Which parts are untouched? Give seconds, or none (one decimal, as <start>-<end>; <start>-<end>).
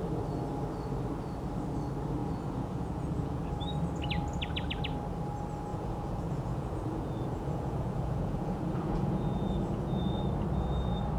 0.0-2.2; 3.4-5.7; 10.2-11.2